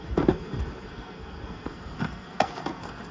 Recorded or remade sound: remade